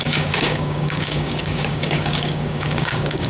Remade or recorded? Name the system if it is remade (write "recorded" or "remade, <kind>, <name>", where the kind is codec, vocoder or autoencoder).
remade, codec, DAC